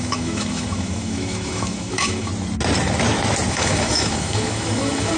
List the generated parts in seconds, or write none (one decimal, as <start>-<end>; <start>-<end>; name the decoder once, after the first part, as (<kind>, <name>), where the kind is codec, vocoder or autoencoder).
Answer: 0.0-2.3 (autoencoder, DAC-VAE); 3.5-5.2